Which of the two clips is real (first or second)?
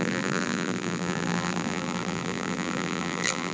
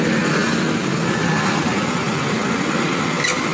second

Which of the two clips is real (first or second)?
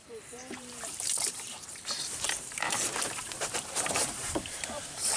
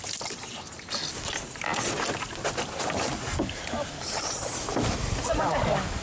second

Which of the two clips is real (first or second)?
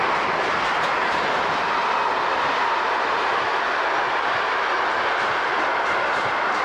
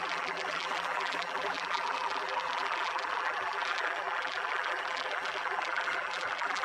first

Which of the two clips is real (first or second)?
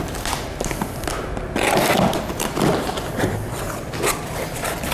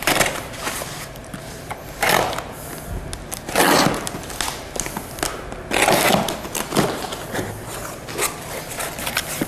second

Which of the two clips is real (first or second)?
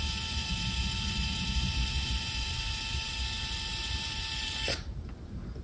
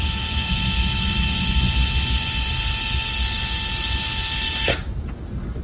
second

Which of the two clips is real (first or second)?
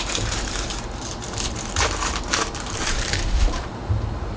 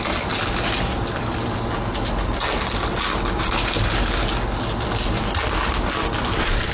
second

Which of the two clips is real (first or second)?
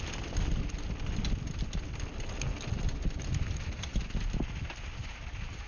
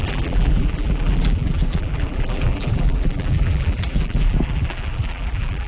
first